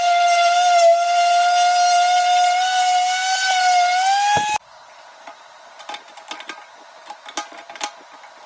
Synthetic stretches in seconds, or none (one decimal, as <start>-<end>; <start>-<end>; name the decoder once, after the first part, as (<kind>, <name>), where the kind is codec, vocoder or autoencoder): none